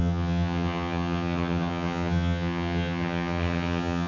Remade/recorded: remade